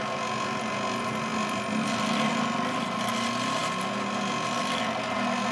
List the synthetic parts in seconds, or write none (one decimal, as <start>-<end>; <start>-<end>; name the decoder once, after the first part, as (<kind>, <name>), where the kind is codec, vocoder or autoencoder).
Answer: none